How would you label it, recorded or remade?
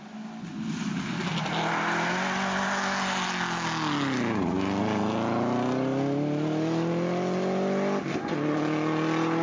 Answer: recorded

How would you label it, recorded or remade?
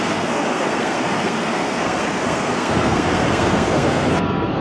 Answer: remade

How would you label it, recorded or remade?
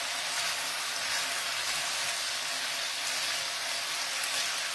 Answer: recorded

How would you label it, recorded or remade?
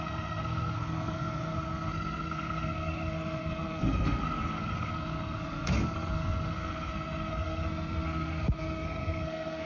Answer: remade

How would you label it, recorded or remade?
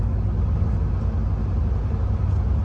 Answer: recorded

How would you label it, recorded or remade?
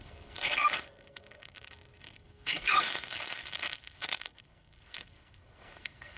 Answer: remade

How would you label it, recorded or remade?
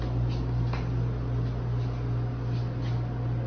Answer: recorded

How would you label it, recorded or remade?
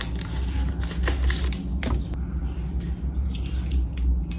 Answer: recorded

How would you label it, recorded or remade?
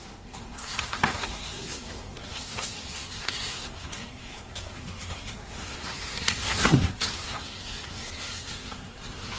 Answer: remade